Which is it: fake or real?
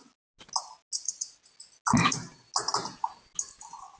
real